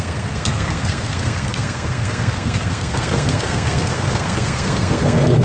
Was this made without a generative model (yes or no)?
no